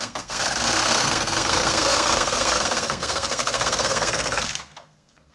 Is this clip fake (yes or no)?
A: yes